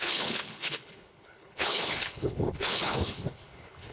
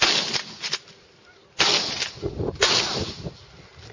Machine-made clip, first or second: first